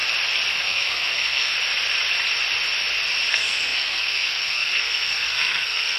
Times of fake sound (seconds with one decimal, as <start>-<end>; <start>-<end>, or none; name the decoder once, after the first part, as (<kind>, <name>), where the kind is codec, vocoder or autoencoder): 0.5-1.5 (codec, SNAC); 3.3-6.0